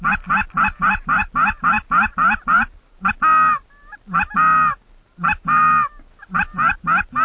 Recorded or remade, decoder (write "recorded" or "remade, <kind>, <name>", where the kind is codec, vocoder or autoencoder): recorded